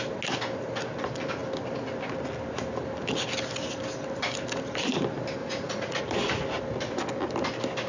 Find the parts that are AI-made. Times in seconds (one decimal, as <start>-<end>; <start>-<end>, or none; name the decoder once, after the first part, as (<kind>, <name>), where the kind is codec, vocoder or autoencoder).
5.4-6.0 (vocoder, Vocos)